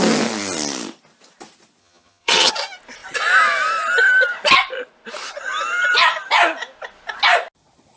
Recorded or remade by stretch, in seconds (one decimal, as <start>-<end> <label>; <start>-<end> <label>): 0.0-1.8 recorded; 1.8-2.5 remade; 2.5-8.0 recorded